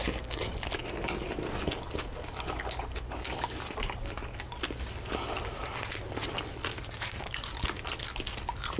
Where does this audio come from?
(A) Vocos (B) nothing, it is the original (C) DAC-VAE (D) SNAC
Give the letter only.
B